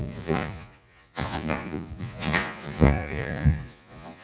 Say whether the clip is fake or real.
fake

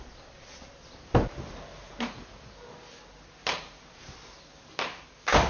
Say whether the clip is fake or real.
real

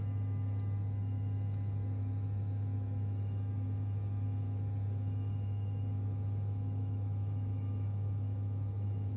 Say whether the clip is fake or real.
fake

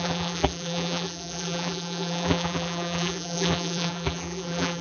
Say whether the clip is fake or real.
fake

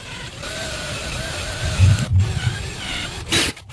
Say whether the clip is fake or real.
fake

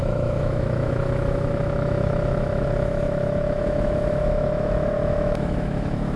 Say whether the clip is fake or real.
fake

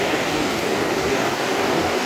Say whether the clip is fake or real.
fake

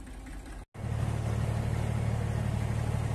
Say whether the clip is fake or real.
real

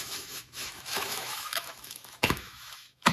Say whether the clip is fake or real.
fake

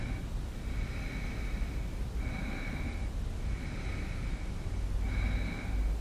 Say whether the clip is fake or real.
real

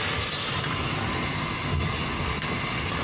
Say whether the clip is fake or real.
real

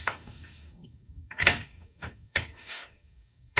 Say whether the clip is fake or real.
fake